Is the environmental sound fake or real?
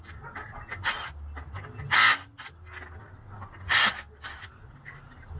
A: real